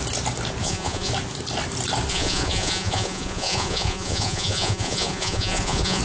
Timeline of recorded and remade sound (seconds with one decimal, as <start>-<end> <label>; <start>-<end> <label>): 0.0-0.6 recorded; 0.6-1.1 remade; 1.1-2.1 recorded; 2.1-6.0 remade